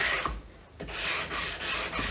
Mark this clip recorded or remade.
recorded